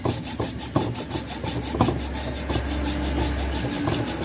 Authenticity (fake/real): real